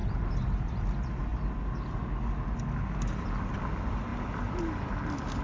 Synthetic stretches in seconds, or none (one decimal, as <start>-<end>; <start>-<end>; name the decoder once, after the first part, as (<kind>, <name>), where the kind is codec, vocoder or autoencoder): 4.1-4.8 (vocoder, BigVGAN v2)